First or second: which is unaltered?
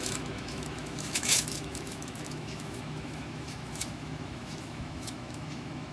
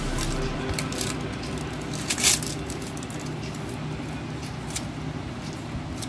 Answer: second